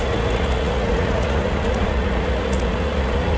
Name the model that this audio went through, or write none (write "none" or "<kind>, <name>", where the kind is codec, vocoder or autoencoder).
vocoder, Vocos